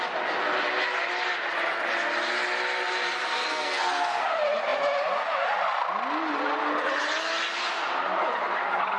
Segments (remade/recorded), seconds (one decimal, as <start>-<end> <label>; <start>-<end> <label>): 0.0-3.4 recorded; 3.4-4.2 remade; 4.2-9.0 recorded